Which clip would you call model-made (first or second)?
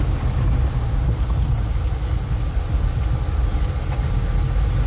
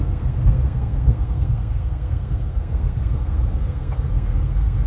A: second